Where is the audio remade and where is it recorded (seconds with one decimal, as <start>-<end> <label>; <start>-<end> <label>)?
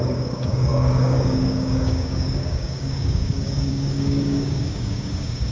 0.0-5.5 remade